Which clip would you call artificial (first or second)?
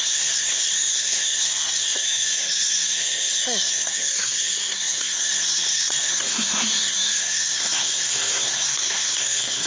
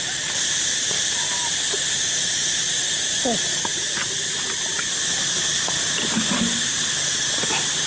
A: first